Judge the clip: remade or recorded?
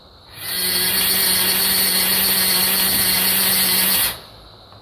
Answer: recorded